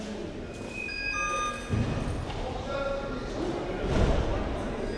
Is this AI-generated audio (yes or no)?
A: no